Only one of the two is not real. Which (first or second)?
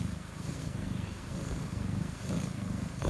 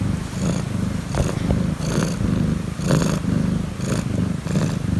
first